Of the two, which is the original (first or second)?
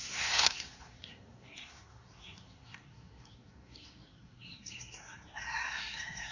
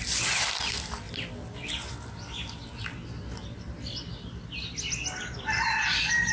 second